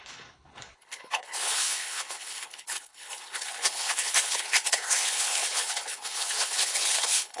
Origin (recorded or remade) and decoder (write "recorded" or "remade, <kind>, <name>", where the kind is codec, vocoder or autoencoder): remade, codec, HILCodec